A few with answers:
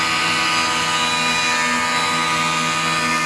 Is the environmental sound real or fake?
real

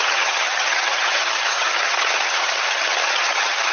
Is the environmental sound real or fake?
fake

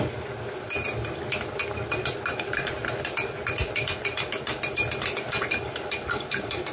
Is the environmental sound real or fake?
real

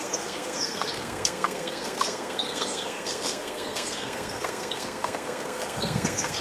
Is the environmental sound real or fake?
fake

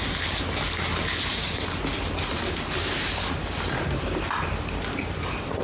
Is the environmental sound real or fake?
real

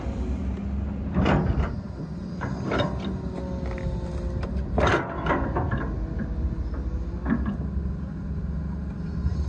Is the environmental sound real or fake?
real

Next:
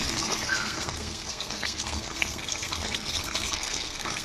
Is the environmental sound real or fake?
fake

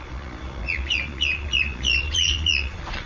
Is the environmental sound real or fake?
fake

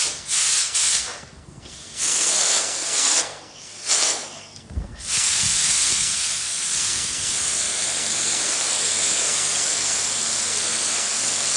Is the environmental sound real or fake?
fake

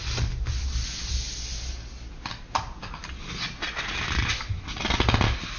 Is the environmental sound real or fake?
real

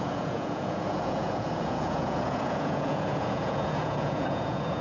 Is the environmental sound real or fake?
fake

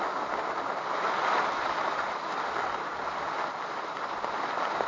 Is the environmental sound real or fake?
real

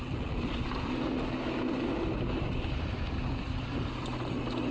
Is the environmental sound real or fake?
real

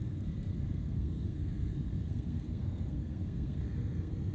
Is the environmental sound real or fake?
fake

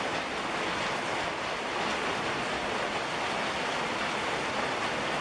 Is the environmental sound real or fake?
real